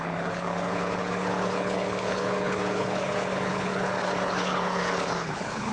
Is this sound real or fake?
fake